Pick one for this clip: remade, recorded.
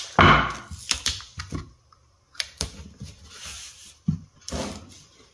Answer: recorded